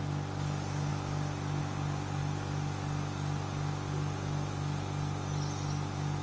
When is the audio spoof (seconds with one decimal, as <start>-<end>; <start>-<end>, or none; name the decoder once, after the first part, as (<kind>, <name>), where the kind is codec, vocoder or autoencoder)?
none